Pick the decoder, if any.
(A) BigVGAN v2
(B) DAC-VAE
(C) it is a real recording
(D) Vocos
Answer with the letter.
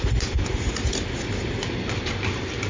C